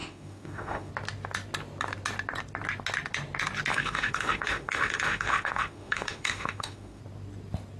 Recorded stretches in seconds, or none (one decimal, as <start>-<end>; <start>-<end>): 0.9-3.7; 7.0-7.8